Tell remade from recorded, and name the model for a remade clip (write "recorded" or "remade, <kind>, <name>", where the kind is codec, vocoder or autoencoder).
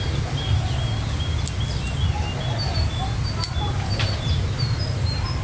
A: recorded